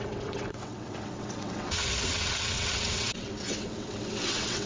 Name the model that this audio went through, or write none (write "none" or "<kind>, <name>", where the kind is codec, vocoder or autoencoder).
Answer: vocoder, WaveNeXt